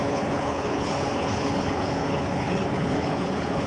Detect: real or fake fake